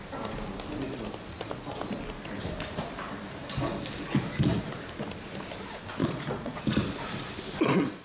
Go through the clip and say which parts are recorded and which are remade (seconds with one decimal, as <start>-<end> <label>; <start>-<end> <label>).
0.0-6.0 recorded; 6.0-6.6 remade; 6.6-8.0 recorded